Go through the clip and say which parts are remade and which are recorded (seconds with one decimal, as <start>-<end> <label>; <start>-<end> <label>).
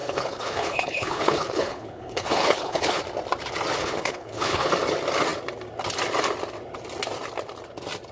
0.0-3.0 remade; 3.0-3.8 recorded; 3.8-4.7 remade; 4.7-8.1 recorded